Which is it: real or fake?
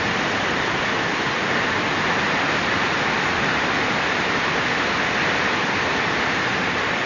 real